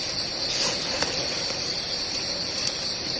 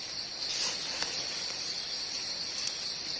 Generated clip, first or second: first